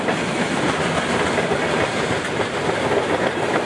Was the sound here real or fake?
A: real